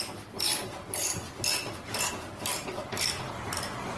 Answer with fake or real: real